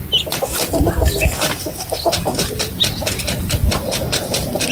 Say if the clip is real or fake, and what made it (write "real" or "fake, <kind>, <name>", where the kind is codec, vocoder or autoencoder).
real